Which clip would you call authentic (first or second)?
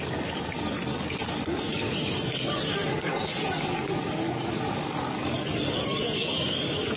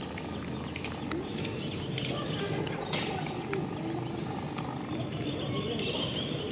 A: second